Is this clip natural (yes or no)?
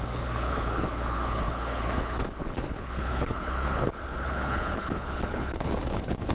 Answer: no